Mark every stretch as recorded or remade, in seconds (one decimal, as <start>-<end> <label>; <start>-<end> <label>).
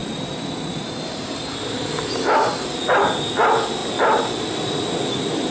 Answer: 0.0-1.9 remade; 1.9-5.5 recorded